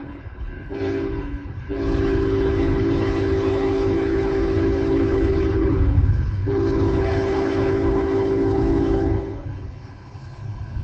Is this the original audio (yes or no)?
no